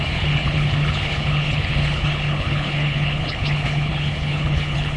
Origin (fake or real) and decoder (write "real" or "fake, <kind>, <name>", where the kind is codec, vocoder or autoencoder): fake, codec, HILCodec